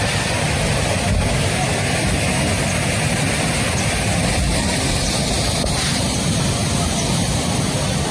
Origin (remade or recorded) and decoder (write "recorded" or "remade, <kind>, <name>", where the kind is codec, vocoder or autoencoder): recorded